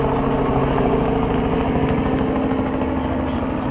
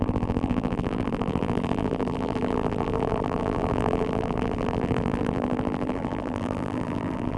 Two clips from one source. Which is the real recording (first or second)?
first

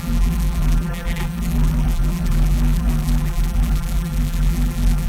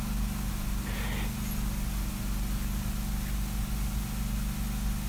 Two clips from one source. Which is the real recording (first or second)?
second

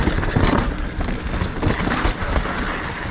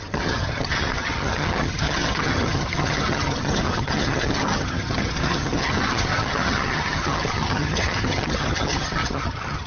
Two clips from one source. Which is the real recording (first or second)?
first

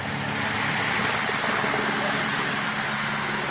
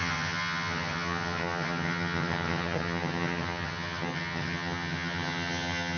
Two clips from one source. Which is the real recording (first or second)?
first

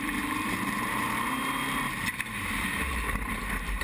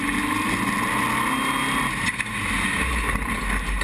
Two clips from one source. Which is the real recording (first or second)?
second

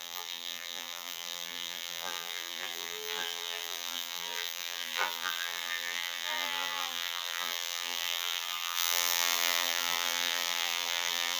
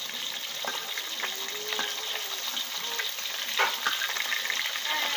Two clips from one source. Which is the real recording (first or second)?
second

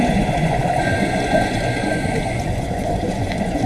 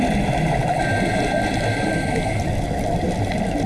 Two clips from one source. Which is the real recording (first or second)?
second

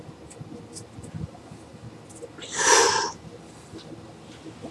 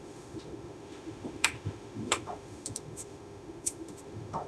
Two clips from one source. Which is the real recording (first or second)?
first